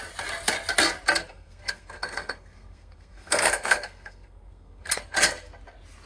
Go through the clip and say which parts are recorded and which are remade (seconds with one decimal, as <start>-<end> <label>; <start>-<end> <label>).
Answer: 0.0-1.3 recorded; 1.3-5.0 remade; 5.0-6.1 recorded